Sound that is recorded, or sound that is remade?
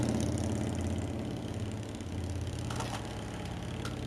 recorded